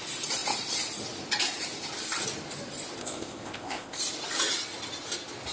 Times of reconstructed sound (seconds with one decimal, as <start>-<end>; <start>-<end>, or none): 3.0-4.0

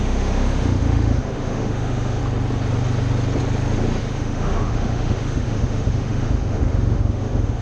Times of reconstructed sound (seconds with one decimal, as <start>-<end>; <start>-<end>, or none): 0.0-2.2; 4.0-7.6

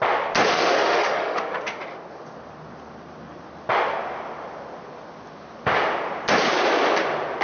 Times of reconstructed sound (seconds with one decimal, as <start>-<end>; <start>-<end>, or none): 0.5-1.8

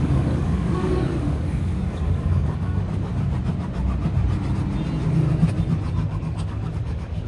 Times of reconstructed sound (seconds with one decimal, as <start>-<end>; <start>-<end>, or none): 0.0-3.1; 6.1-7.3